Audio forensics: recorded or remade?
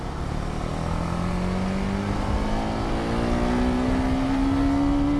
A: recorded